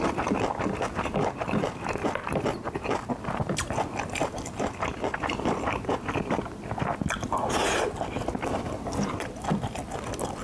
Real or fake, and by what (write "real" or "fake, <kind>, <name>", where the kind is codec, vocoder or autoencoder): real